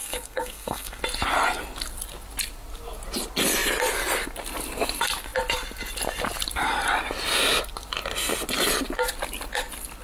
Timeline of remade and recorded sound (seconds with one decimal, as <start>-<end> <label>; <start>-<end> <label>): 0.0-1.0 remade; 1.0-10.0 recorded